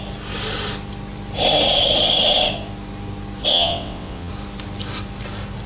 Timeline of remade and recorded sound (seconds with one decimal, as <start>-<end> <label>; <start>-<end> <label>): 0.0-3.5 recorded; 3.5-4.3 remade; 4.3-5.7 recorded